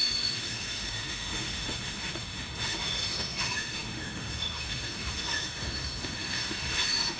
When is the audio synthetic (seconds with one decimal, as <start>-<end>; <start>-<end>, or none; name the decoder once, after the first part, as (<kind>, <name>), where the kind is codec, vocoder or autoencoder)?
0.0-7.2 (autoencoder, DAC-VAE)